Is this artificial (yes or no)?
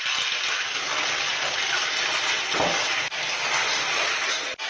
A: no